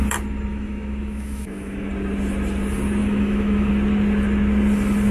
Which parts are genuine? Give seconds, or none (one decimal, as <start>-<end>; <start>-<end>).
0.0-0.5; 1.9-3.0; 3.7-5.1